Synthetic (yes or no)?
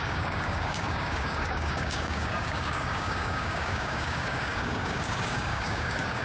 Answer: yes